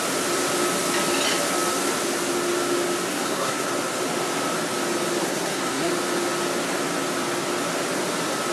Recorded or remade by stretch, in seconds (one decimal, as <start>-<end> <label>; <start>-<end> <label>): 0.0-3.1 recorded; 3.1-3.7 remade; 3.7-5.2 recorded; 5.2-5.9 remade; 5.9-8.5 recorded